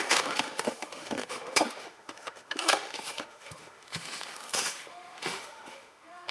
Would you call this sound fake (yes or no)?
yes